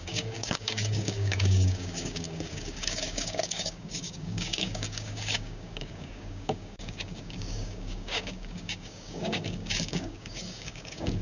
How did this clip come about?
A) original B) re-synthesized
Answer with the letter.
B